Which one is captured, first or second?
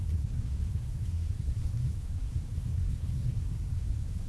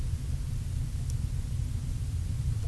second